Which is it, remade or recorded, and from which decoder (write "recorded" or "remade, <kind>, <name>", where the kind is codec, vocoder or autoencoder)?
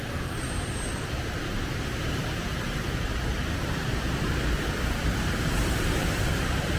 remade, vocoder, BigVGAN v2